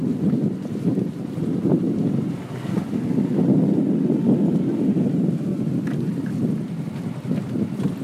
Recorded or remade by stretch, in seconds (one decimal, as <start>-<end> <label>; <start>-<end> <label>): 0.0-8.0 recorded